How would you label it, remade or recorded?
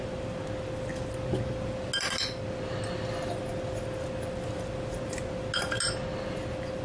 recorded